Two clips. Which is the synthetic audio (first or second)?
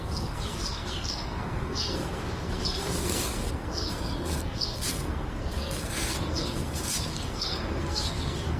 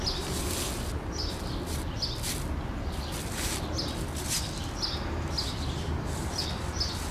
first